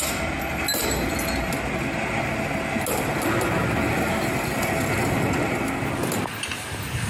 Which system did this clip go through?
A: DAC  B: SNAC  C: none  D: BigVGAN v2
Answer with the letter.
C